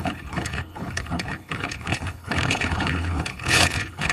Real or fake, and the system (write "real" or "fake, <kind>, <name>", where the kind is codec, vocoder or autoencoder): fake, codec, HILCodec